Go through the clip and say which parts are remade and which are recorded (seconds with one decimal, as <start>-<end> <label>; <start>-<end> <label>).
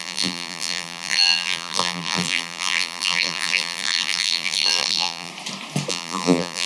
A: 0.0-5.3 remade; 5.3-5.9 recorded; 5.9-6.7 remade